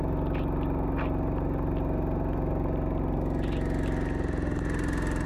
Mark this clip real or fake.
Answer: real